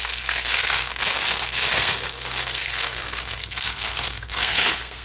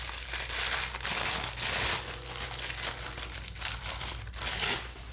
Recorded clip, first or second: second